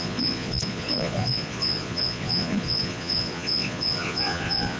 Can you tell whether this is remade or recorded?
remade